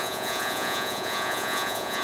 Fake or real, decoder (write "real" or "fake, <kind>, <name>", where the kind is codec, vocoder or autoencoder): fake, vocoder, Vocos